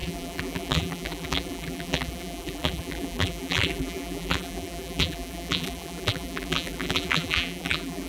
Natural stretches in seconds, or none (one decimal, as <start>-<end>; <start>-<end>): none